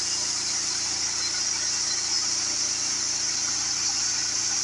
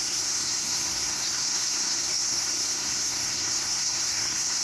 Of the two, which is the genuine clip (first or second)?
first